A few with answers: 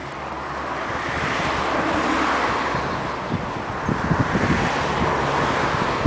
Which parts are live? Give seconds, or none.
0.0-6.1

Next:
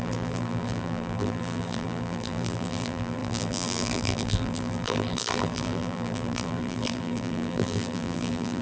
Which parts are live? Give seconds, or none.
none

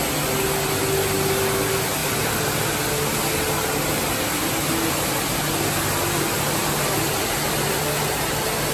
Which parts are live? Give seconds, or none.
0.0-2.0; 2.6-8.7

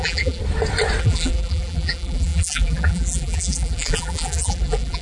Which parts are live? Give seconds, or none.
0.4-1.0

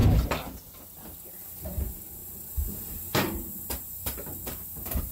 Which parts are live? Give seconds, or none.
0.0-1.3

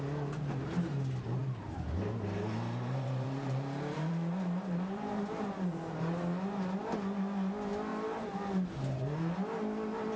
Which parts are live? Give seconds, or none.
0.0-1.4; 6.2-7.9; 9.0-10.2

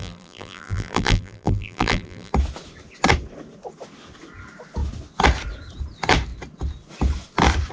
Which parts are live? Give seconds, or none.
2.3-7.7